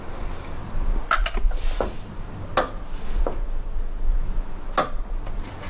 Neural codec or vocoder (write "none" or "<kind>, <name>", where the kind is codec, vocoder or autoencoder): none